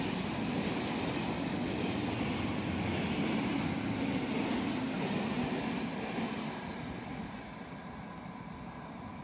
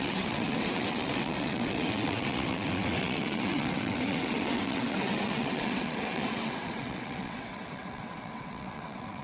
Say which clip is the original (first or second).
first